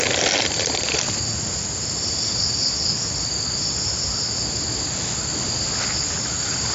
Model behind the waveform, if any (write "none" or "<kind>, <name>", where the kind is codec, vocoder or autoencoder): none